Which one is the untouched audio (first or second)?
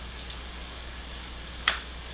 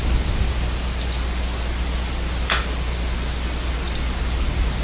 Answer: second